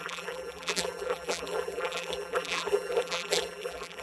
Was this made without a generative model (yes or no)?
no